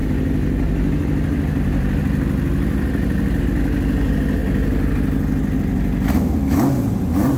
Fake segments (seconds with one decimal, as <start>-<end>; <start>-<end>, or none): none